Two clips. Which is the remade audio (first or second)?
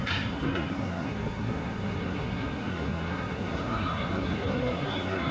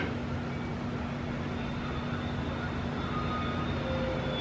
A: first